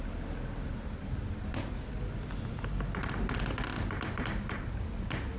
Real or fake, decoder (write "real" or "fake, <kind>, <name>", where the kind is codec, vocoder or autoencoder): real